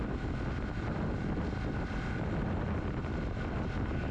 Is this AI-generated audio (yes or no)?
no